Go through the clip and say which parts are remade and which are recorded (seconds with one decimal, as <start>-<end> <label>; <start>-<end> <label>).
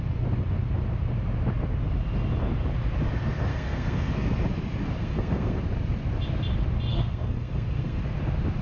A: 0.0-3.5 recorded; 3.5-4.1 remade; 4.1-5.0 recorded; 5.0-5.6 remade; 5.6-6.9 recorded; 6.9-8.0 remade; 8.0-8.6 recorded